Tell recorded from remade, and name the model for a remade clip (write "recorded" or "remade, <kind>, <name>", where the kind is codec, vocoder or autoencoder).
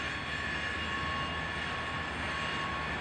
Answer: recorded